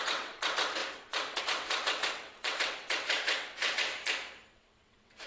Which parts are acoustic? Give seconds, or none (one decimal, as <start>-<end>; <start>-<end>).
3.9-4.5